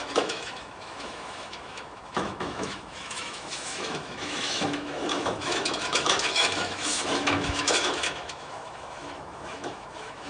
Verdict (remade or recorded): remade